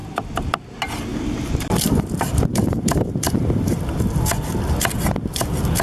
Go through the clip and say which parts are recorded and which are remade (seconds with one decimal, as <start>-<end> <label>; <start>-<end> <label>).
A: 0.0-0.5 remade; 0.5-1.1 recorded; 1.1-4.6 remade; 4.6-5.8 recorded